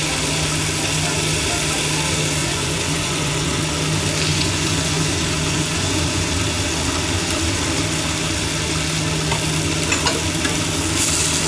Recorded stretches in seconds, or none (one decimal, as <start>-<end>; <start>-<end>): 0.0-2.4; 3.6-4.3; 6.2-11.5